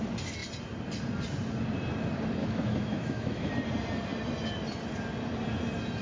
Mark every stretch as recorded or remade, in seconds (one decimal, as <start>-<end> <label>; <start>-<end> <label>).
0.0-2.4 recorded; 2.4-3.5 remade; 3.5-6.0 recorded